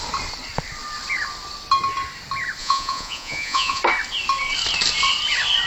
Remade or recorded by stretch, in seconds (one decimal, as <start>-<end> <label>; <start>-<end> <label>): 0.0-2.6 recorded; 2.6-3.8 remade; 3.8-5.7 recorded